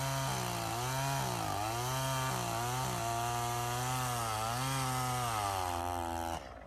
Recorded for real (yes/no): yes